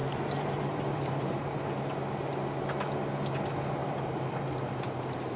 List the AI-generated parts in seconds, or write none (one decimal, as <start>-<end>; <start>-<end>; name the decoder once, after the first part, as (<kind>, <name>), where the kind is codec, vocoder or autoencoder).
0.0-1.4 (vocoder, BigVGAN v2); 3.8-4.7